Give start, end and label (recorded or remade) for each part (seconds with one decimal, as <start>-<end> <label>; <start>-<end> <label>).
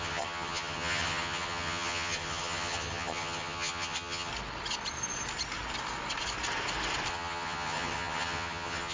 0.0-4.3 remade; 4.3-7.1 recorded; 7.1-8.9 remade